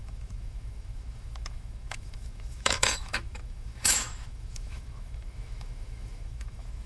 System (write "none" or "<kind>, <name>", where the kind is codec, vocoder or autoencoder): autoencoder, DAC-VAE